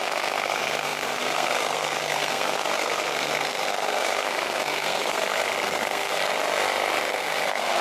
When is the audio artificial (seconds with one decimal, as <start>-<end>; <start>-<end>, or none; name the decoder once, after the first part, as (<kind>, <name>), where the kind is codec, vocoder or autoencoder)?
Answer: 0.0-6.2 (codec, SNAC); 7.1-7.8